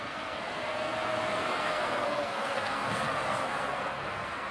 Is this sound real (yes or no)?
no